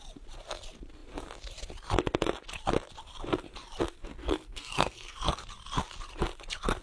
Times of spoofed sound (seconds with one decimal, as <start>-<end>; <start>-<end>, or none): 4.2-5.4